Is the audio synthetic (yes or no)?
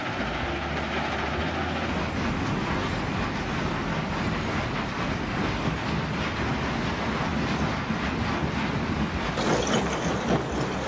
no